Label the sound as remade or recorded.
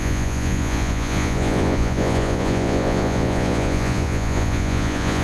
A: remade